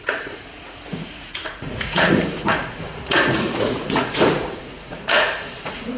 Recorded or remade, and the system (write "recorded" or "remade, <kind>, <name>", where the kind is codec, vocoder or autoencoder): remade, vocoder, Vocos